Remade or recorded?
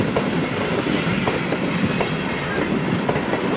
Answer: recorded